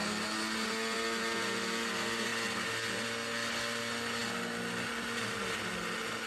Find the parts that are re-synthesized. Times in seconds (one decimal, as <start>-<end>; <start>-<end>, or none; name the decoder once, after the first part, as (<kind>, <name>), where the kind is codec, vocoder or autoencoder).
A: none